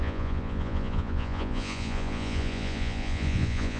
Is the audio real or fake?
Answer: fake